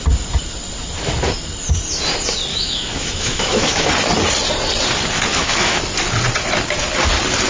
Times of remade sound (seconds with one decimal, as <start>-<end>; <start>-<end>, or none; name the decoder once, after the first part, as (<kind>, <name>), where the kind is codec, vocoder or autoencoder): 2.5-3.9 (autoencoder, DAC-VAE); 5.3-5.8